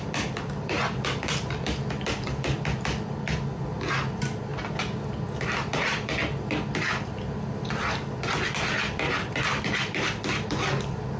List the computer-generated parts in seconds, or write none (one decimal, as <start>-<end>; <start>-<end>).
none